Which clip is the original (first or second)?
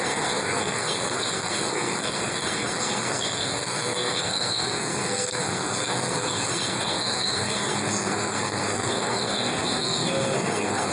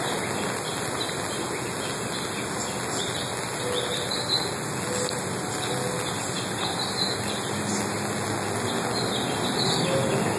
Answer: second